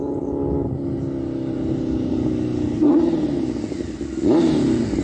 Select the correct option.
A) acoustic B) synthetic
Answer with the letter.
A